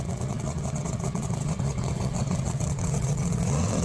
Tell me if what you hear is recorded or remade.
remade